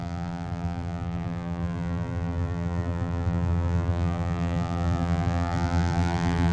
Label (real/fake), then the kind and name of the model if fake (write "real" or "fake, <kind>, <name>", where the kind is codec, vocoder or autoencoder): fake, vocoder, BigVGAN v2